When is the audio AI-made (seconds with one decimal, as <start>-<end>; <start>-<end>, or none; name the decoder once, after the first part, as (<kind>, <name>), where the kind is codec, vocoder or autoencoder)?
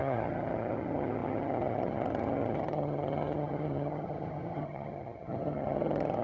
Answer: 0.0-6.2 (vocoder, HiFi-GAN)